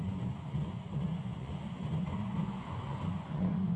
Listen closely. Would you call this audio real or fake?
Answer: fake